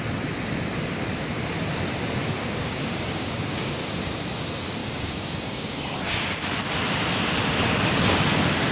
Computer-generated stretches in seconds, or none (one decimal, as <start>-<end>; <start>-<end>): 2.2-3.7; 4.8-6.1